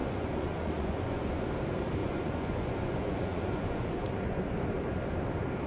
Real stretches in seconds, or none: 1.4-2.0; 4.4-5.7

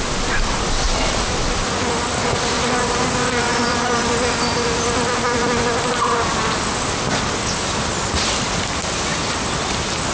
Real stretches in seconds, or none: 0.0-10.1

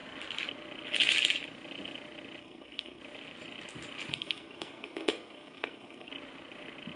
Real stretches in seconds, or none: 0.0-2.4; 3.0-4.1; 6.1-7.0

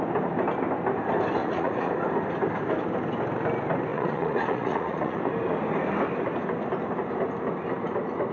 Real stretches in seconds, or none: 0.0-1.4; 1.9-3.9; 5.2-8.3

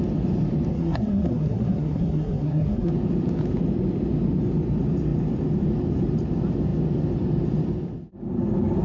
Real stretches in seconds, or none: 0.0-0.7; 2.9-8.8

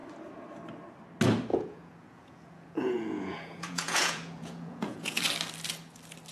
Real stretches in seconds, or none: 0.0-1.5; 5.2-6.3

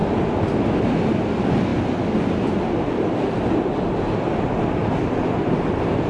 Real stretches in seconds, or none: 0.0-6.1

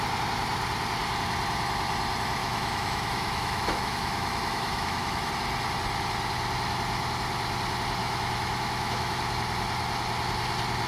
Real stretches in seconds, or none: 0.0-2.4; 5.3-8.0; 9.2-10.9